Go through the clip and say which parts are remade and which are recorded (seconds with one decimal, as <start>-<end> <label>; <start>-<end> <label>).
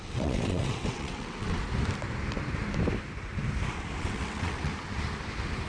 0.0-1.6 remade; 1.6-4.0 recorded; 4.0-4.7 remade; 4.7-5.7 recorded